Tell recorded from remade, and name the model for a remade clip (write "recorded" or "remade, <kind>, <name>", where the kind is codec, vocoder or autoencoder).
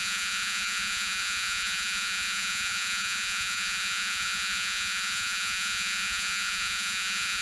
remade, vocoder, Vocos